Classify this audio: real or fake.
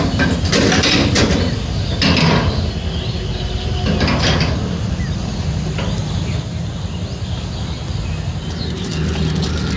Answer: real